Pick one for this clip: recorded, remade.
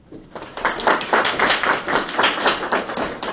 remade